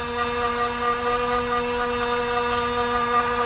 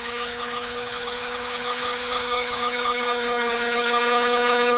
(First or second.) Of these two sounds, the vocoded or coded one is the second